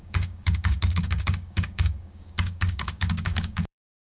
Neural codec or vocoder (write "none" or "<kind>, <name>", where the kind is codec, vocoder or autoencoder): codec, DAC